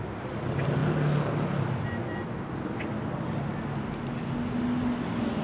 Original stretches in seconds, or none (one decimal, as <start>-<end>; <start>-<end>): 0.0-5.4